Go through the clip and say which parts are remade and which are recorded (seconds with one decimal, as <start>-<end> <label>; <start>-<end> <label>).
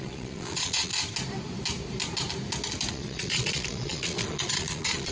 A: 0.0-0.9 remade; 0.9-2.9 recorded; 2.9-5.1 remade